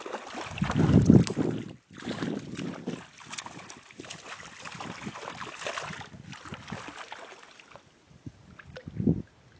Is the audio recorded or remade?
recorded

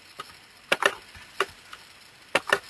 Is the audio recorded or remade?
recorded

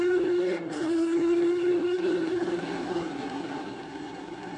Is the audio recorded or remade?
remade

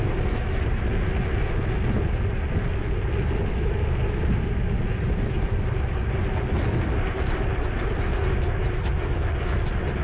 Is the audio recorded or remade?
recorded